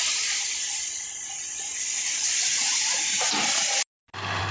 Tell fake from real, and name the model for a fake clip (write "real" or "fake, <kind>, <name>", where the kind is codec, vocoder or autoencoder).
real